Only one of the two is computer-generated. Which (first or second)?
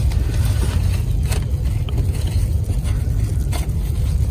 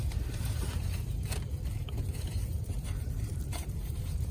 second